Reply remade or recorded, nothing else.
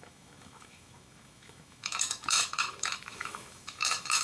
remade